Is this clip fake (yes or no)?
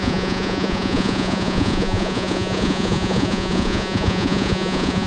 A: yes